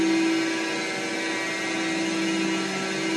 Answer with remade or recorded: recorded